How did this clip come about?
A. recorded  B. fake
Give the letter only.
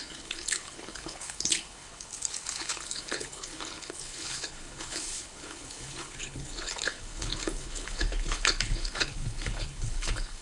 B